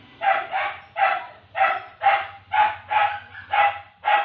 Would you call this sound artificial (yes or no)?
no